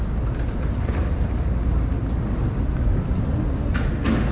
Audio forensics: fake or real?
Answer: real